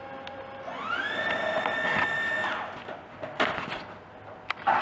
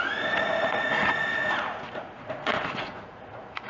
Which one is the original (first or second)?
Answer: first